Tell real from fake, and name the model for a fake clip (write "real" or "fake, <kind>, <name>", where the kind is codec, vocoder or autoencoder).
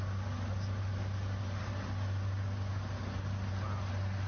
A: real